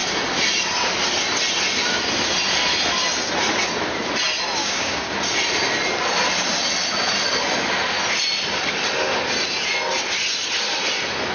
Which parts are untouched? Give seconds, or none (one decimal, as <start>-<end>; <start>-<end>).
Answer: 0.0-4.6; 5.1-11.3